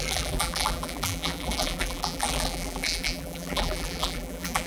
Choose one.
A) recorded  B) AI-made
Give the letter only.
B